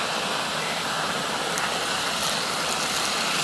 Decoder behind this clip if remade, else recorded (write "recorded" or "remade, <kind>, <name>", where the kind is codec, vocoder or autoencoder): recorded